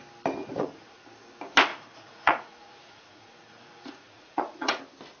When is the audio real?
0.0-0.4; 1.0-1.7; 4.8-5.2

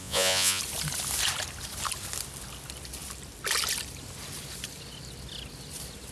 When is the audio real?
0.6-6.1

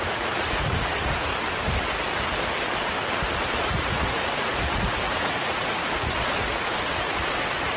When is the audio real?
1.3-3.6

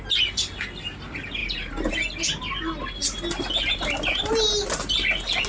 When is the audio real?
0.0-5.5